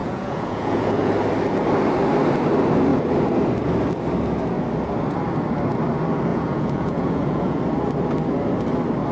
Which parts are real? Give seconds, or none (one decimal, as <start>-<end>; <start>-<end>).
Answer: 1.1-6.3; 7.6-9.1